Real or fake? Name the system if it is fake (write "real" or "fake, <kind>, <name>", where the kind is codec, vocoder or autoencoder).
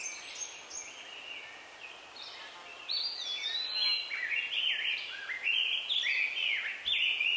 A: real